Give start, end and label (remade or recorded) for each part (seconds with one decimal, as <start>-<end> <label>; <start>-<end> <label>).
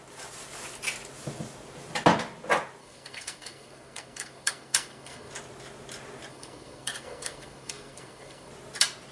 0.0-2.8 recorded; 2.8-5.3 remade; 5.3-6.3 recorded; 6.3-8.5 remade; 8.5-9.1 recorded